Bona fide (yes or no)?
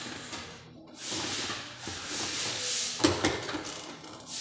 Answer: yes